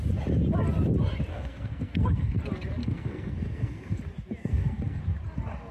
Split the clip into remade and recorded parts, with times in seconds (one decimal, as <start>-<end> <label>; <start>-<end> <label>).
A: 0.0-1.3 recorded; 1.3-2.4 remade; 2.4-2.8 recorded; 2.8-4.0 remade; 4.0-4.4 recorded; 4.4-5.0 remade; 5.0-5.7 recorded